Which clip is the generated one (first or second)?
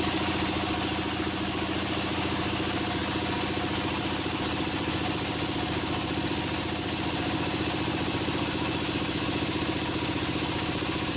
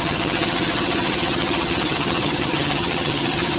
second